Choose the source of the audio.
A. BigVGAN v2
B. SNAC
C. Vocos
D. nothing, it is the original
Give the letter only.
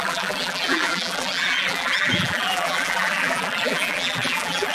A